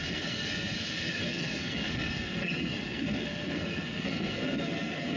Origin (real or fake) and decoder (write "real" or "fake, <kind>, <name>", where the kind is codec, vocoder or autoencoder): fake, codec, SNAC